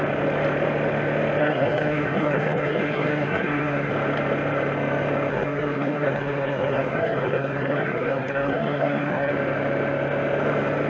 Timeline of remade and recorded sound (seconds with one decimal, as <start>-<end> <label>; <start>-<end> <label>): 0.0-1.4 recorded; 1.4-3.9 remade; 3.9-5.3 recorded; 5.3-9.3 remade; 9.3-10.9 recorded